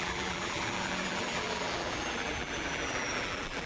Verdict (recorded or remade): remade